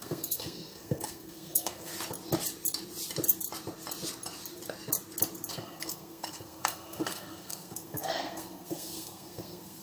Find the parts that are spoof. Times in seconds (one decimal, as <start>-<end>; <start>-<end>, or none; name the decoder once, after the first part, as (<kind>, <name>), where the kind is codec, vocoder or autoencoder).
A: 0.0-1.9 (codec, SNAC); 5.5-9.8